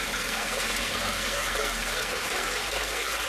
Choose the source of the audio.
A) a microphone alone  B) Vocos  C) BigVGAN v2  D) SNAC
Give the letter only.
D